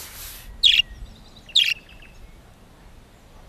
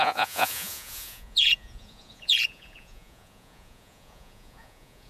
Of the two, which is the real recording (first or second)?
first